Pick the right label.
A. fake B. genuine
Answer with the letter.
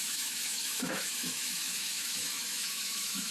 A